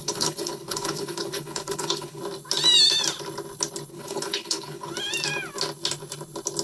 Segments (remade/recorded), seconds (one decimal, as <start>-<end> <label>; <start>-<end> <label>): 0.0-2.2 remade; 2.2-3.9 recorded; 3.9-4.9 remade; 4.9-6.6 recorded